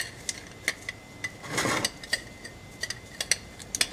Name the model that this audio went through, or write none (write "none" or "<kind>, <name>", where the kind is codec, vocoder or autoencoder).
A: none